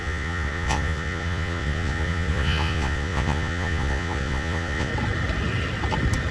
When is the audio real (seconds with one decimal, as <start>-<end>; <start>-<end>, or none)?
4.9-6.3